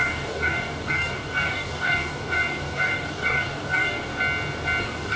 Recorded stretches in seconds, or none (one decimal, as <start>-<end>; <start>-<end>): 4.1-4.8